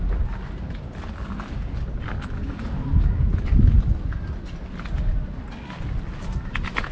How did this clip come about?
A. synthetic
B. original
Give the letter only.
B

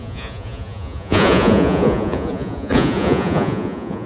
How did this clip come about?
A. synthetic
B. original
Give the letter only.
A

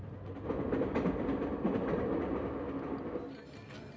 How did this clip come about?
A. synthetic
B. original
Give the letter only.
B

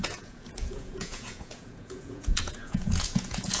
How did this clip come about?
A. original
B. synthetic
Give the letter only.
B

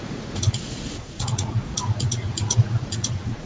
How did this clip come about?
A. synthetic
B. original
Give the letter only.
A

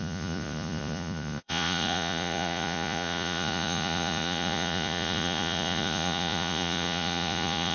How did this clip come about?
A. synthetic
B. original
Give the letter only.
A